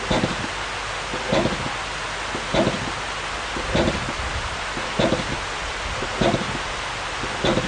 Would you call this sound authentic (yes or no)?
yes